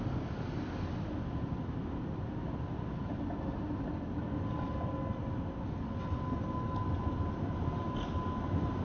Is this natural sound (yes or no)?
yes